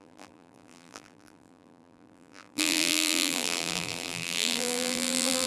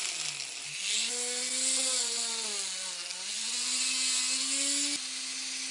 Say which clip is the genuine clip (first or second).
second